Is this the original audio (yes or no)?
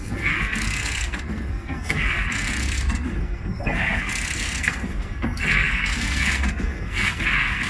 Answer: no